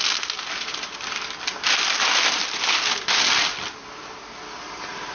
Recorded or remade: recorded